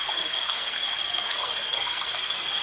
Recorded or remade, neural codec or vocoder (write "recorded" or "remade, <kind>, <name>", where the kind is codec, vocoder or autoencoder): remade, codec, SNAC